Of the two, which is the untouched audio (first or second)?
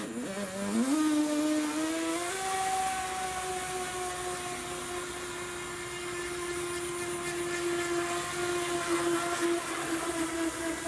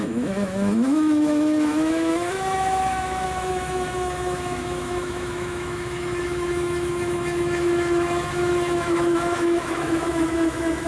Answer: first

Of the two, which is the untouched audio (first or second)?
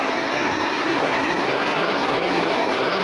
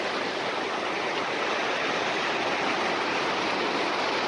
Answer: second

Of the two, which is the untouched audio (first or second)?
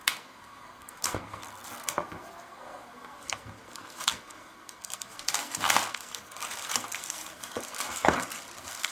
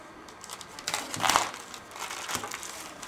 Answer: second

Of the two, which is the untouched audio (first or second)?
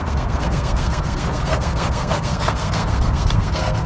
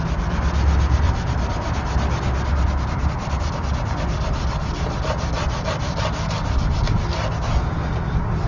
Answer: second